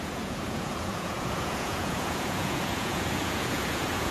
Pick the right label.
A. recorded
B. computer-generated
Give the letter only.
B